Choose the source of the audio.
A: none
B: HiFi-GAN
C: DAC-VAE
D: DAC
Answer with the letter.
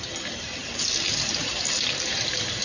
A